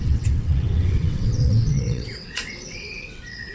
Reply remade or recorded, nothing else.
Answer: remade